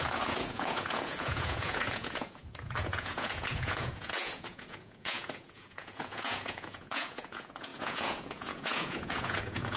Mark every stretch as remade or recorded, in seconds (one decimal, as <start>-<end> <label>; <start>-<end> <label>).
0.0-9.8 remade